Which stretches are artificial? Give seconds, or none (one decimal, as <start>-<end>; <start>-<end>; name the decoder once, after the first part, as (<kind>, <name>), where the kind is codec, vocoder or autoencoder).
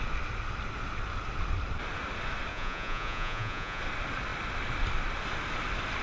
2.5-3.8 (vocoder, Vocos)